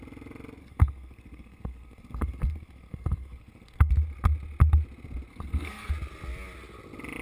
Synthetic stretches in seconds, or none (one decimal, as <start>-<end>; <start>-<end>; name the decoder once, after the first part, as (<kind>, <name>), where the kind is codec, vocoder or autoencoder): 0.6-3.9 (codec, SNAC); 5.3-5.9